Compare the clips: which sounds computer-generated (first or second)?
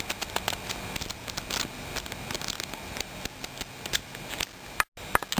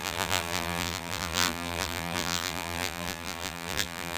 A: second